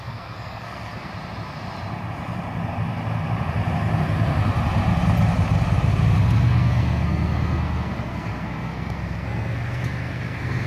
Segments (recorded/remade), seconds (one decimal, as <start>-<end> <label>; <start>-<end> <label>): 0.0-1.1 remade; 1.1-6.2 recorded; 6.2-10.7 remade